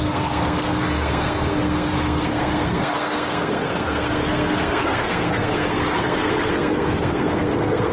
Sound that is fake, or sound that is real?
fake